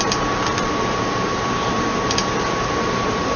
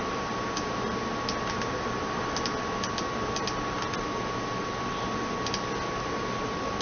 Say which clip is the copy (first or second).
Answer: first